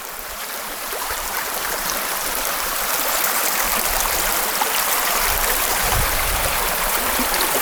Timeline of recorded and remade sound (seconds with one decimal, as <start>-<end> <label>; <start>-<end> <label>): 0.0-3.4 remade; 3.4-5.6 recorded; 5.6-7.6 remade